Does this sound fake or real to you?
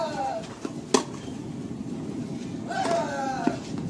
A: real